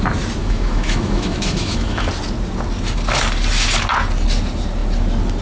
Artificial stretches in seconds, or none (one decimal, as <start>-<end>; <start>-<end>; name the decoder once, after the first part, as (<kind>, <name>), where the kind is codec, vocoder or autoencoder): 0.4-2.1 (autoencoder, DAC-VAE)